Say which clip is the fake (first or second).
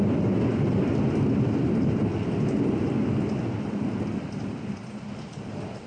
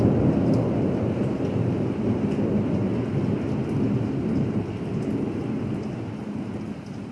first